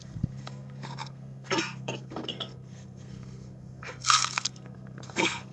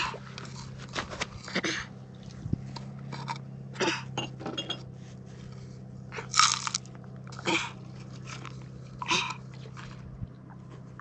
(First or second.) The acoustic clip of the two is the second